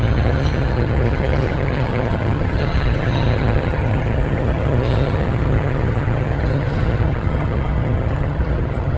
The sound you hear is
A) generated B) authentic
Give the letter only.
A